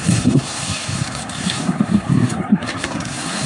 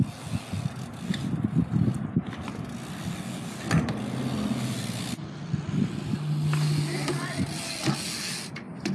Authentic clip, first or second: second